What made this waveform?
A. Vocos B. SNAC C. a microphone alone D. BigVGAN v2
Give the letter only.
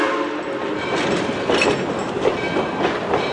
C